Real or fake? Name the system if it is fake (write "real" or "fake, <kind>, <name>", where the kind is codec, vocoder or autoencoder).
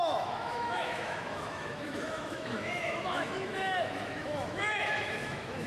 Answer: fake, autoencoder, DAC-VAE